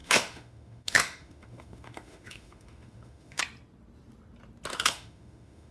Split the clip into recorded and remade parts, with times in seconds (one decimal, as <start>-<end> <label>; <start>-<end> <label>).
0.0-3.4 remade; 3.4-4.7 recorded; 4.7-5.7 remade